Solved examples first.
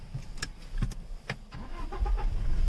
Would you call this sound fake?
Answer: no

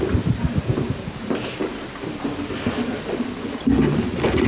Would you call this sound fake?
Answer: no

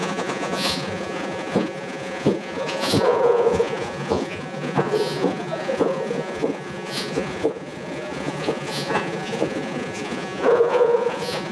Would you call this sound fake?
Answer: yes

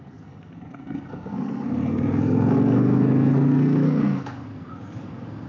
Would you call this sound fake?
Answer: yes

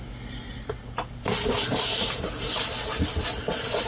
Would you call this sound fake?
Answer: no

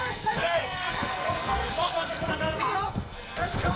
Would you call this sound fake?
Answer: yes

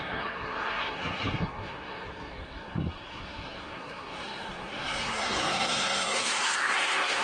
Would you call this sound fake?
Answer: yes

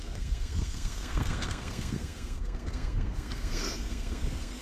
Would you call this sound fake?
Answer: yes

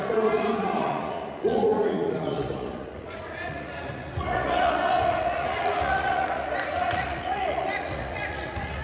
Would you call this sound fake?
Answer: yes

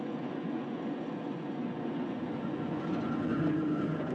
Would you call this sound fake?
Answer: yes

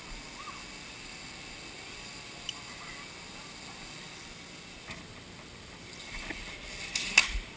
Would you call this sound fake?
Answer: no